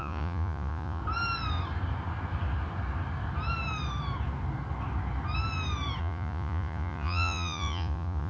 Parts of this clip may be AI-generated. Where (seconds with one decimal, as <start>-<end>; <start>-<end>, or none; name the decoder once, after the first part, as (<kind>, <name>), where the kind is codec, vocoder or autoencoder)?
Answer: 0.0-1.0 (vocoder, Vocos); 6.0-8.3